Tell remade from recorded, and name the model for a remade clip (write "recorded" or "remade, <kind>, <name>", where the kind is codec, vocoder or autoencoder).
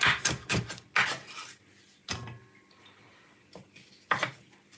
recorded